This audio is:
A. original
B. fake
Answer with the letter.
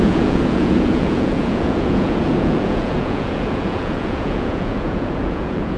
B